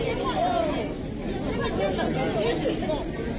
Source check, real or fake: real